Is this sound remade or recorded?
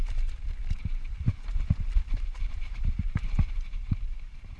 remade